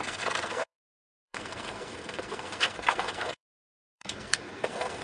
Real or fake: fake